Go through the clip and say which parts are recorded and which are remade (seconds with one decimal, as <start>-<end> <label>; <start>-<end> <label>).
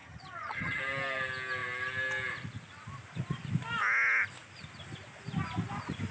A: 0.0-0.8 remade; 0.8-6.1 recorded